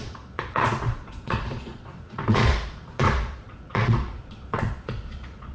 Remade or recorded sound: remade